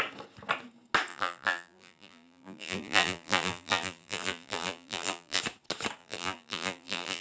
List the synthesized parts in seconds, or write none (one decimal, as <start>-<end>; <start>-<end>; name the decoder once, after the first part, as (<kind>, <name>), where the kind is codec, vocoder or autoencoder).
1.1-5.4 (vocoder, BigVGAN v2); 6.0-7.2